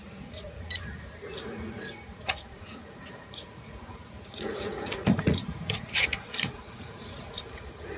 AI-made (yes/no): yes